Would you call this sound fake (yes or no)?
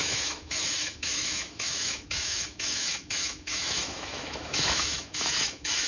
yes